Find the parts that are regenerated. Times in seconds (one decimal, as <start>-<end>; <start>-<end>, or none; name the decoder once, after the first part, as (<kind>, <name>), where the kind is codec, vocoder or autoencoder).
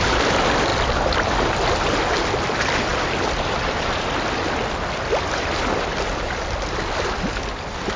none